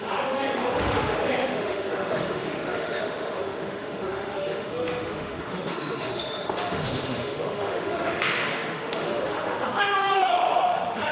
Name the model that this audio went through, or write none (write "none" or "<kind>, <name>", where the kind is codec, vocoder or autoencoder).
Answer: autoencoder, DAC-VAE